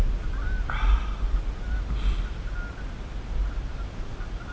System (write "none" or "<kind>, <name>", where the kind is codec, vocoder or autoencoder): none